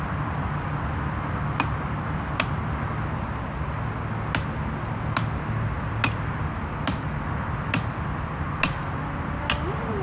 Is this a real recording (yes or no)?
yes